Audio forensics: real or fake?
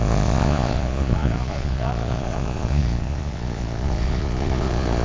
fake